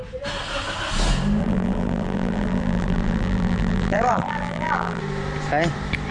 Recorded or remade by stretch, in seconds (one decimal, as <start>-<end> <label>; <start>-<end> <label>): 0.0-1.4 recorded; 1.4-5.0 remade; 5.0-6.1 recorded